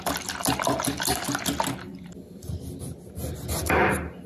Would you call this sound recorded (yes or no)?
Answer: yes